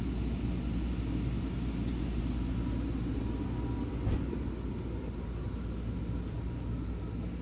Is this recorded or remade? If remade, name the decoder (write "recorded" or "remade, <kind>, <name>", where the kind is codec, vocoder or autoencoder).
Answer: recorded